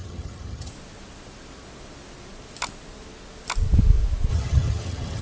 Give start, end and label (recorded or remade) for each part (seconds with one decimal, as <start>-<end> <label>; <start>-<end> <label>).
0.0-0.7 remade; 0.7-4.3 recorded; 4.3-5.2 remade